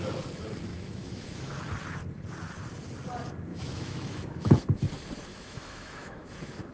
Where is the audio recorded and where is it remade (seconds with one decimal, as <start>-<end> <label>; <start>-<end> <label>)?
0.0-0.7 recorded; 0.7-1.5 remade; 1.5-3.5 recorded; 3.5-4.5 remade; 4.5-5.3 recorded; 5.3-6.3 remade; 6.3-6.7 recorded